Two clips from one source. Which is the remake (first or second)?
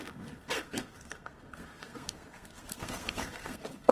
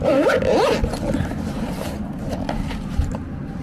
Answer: first